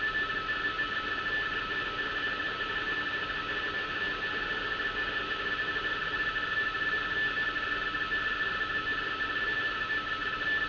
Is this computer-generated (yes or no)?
no